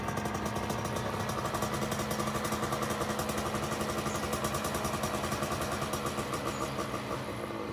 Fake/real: real